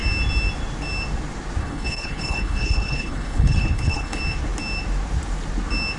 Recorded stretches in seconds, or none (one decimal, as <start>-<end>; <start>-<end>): 0.0-1.6; 4.2-6.0